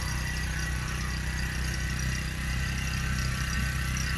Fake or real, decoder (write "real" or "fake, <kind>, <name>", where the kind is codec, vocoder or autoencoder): real